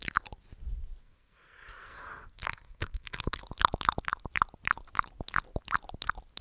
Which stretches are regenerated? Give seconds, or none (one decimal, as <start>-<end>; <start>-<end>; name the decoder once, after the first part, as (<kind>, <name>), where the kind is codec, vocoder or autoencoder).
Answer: 1.0-3.4 (codec, SNAC)